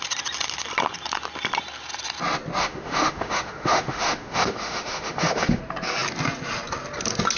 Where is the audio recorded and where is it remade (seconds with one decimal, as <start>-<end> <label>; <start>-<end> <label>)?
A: 0.0-2.6 recorded; 2.6-5.6 remade; 5.6-7.4 recorded